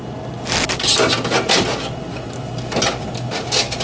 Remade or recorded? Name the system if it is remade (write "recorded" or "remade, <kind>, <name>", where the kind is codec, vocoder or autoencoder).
recorded